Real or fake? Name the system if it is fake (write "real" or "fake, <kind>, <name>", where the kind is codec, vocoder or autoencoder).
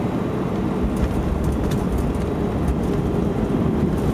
real